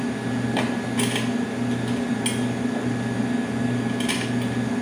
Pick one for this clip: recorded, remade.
recorded